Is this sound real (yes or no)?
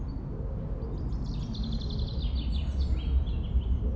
yes